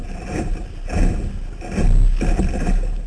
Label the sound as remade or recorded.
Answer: recorded